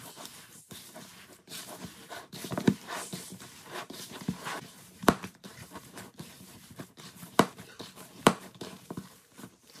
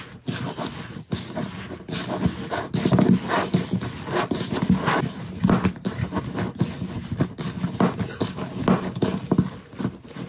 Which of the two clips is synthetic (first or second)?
first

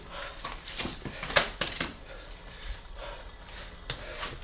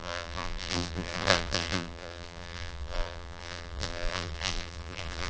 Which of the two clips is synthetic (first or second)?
second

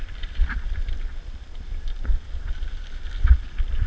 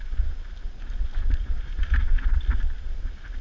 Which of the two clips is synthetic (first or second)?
first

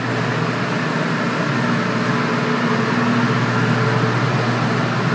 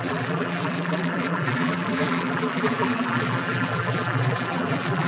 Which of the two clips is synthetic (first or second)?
second